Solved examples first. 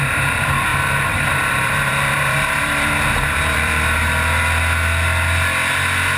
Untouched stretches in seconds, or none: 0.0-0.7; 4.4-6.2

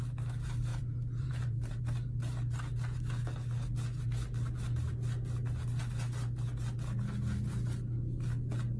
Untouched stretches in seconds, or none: 0.0-0.7; 1.8-8.8

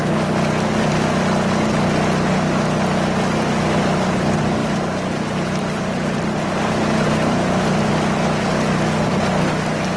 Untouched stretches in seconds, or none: 0.0-4.6; 7.9-10.0